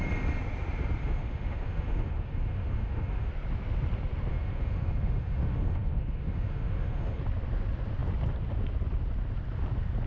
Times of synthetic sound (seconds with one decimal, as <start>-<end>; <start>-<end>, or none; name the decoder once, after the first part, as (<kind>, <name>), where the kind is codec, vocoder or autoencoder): 1.0-3.3 (autoencoder, DAC-VAE); 4.3-7.2